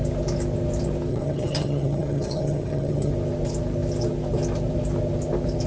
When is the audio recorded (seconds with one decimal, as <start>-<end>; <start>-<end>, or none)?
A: 0.0-1.1; 3.1-5.7